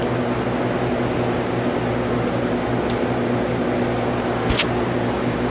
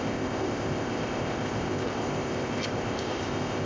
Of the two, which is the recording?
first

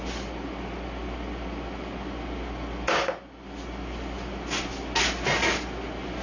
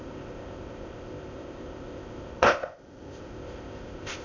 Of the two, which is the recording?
first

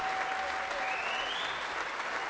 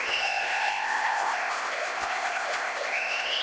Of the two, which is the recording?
first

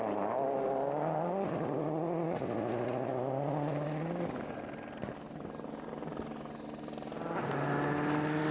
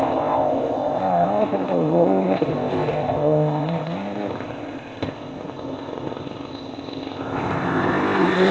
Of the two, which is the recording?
first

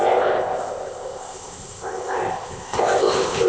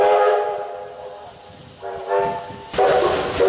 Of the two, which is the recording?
second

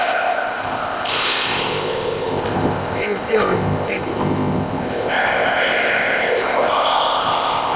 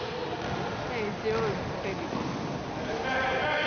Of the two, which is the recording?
second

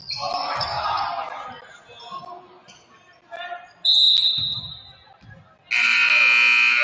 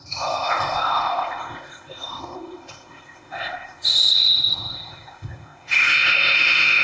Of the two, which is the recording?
first